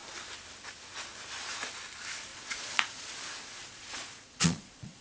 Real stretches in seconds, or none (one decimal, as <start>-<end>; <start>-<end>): 0.0-2.3; 3.1-3.6